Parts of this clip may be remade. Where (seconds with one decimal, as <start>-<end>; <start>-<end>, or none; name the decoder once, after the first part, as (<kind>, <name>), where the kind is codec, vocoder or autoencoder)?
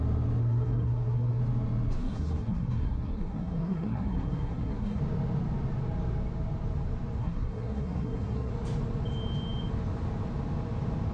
0.4-1.4 (codec, SNAC); 2.0-5.0; 7.2-8.5